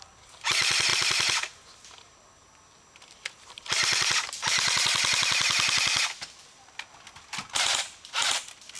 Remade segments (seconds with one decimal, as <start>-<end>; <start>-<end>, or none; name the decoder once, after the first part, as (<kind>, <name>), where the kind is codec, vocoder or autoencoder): none